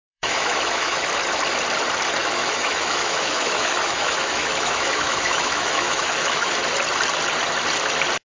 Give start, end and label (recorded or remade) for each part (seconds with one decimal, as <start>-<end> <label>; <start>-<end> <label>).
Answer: 0.0-1.0 remade; 1.0-2.2 recorded; 2.2-6.6 remade; 6.6-8.3 recorded